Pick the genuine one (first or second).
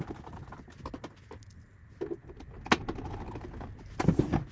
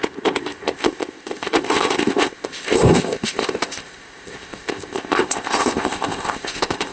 first